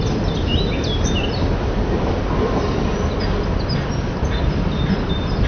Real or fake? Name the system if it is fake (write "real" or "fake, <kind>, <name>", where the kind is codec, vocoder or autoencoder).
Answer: real